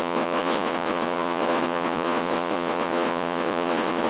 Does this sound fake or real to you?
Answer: fake